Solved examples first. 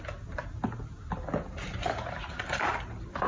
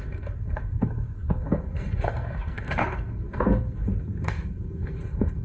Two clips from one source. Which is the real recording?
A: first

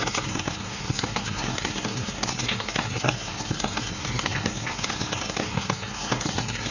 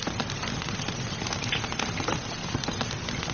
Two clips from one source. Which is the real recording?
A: second